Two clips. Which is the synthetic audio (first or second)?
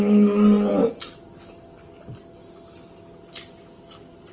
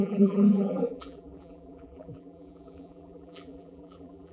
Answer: second